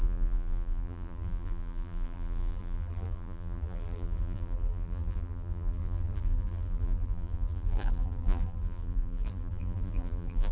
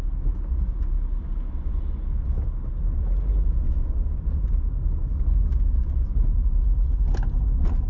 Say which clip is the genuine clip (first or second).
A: second